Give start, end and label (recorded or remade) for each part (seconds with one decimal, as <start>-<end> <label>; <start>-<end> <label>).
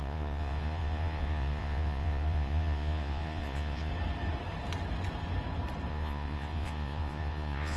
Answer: 0.0-3.9 remade; 3.9-5.9 recorded; 5.9-7.8 remade